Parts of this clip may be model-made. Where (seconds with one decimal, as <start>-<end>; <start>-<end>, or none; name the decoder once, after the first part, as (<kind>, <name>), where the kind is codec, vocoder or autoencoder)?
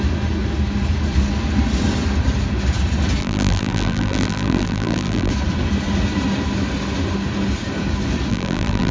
3.2-5.3 (vocoder, BigVGAN v2); 8.3-8.9